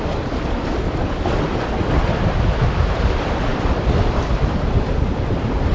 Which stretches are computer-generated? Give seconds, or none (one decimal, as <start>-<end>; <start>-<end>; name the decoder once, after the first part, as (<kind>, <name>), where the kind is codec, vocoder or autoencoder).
3.5-5.3 (vocoder, BigVGAN v2)